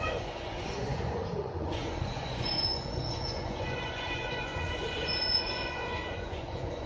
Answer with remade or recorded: remade